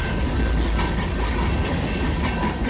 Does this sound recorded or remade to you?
recorded